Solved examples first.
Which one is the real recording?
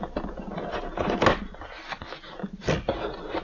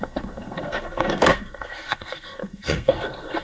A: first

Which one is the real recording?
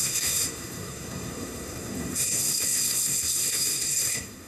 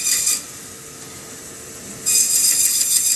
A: second